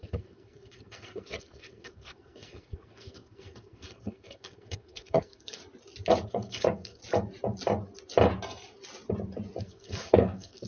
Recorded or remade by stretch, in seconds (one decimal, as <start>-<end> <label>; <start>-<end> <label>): 0.0-5.6 remade; 5.6-6.3 recorded; 6.3-7.0 remade; 7.0-9.6 recorded; 9.6-10.7 remade